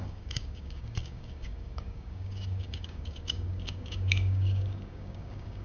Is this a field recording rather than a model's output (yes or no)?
no